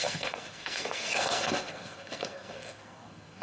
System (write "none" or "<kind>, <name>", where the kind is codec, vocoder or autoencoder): codec, SNAC